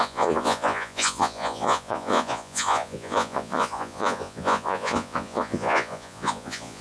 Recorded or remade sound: remade